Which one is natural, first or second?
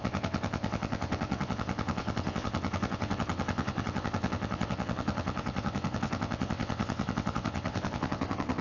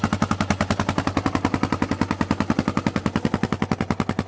second